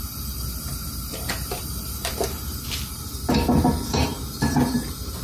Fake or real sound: fake